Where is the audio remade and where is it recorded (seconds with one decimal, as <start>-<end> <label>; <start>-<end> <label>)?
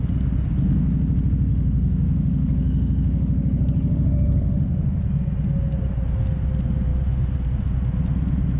0.0-1.5 recorded; 1.5-5.0 remade; 5.0-8.6 recorded